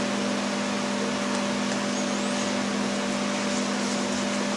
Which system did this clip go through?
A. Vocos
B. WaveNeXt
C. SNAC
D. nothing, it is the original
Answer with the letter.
D